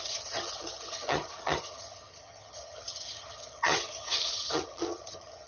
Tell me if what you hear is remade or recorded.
remade